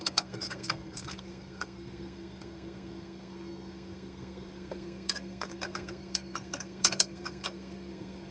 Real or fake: fake